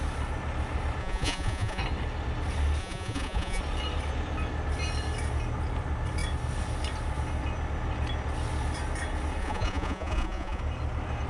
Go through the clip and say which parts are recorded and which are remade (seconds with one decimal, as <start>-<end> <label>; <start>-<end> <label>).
0.0-1.0 recorded; 1.0-1.8 remade; 1.8-2.8 recorded; 2.8-3.6 remade; 3.6-9.4 recorded; 9.4-10.6 remade; 10.6-11.3 recorded